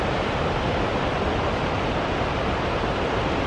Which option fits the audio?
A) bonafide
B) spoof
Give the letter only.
A